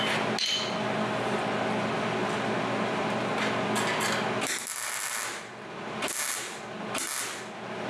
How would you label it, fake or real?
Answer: real